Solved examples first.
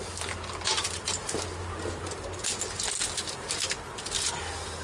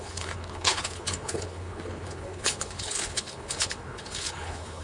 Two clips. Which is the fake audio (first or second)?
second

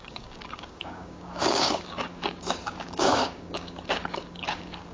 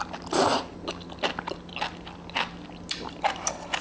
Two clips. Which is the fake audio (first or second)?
first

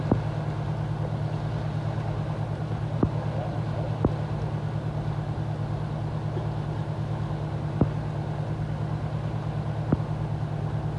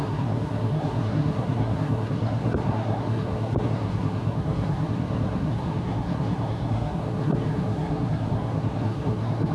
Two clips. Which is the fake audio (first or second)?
second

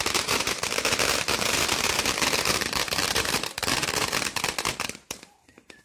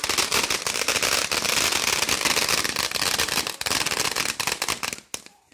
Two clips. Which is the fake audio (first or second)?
first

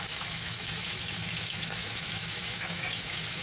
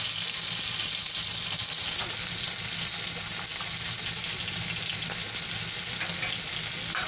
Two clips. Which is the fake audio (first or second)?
first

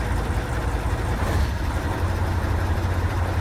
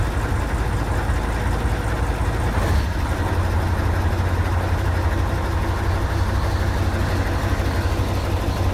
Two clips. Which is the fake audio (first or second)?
first